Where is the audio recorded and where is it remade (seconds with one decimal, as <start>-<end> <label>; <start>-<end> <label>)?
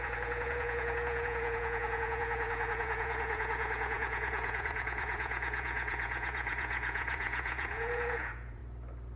0.0-8.6 remade; 8.6-9.2 recorded